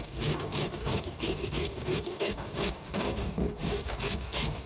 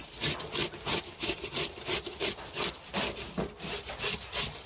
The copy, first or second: first